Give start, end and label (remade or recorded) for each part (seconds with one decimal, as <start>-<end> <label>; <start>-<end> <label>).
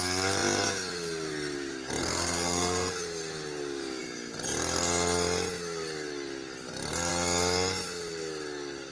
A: 0.0-2.0 recorded; 2.0-2.9 remade; 2.9-8.9 recorded